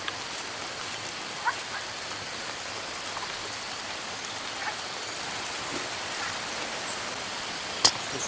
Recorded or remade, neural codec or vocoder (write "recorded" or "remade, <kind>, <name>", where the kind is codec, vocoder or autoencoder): recorded